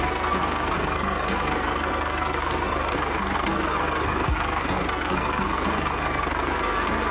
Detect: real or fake fake